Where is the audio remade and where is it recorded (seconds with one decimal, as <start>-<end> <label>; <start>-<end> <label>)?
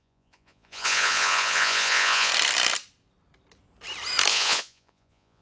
0.0-2.3 remade; 2.3-4.3 recorded; 4.3-5.4 remade